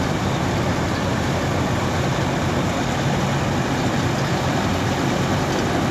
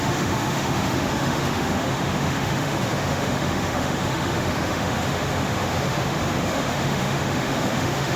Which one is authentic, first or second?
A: first